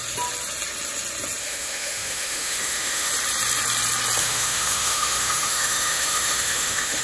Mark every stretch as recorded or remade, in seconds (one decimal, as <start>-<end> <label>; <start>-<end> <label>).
0.0-1.4 recorded; 1.4-3.1 remade; 3.1-4.2 recorded; 4.2-7.0 remade